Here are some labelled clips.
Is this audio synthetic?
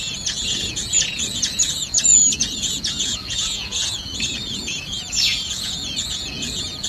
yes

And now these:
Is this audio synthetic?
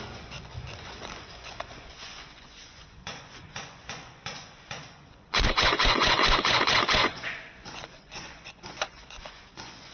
yes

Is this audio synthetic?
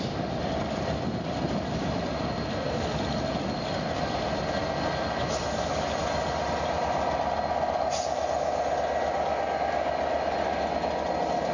no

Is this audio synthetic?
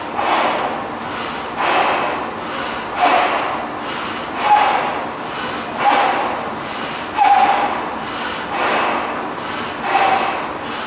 no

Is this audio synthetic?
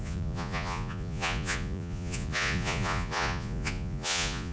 yes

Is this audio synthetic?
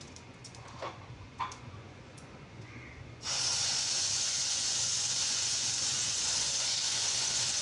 yes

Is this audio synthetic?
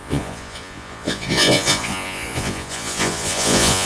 yes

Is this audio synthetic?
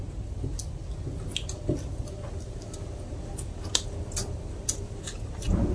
no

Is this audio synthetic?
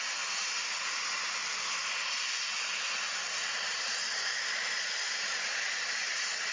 no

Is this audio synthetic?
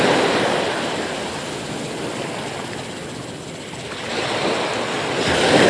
no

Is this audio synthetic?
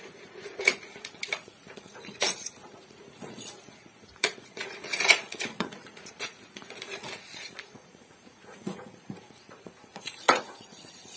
yes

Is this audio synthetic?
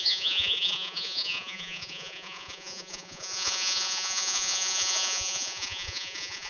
yes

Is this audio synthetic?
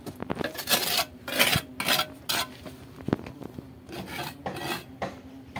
no